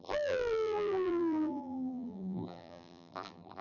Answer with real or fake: fake